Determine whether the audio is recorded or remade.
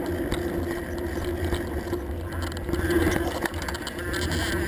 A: recorded